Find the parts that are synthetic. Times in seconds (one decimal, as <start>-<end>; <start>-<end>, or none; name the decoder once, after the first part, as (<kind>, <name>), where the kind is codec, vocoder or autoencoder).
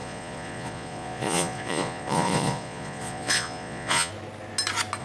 0.0-4.1 (vocoder, Vocos)